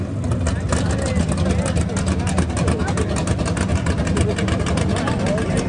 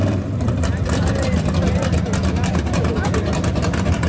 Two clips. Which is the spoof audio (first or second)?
second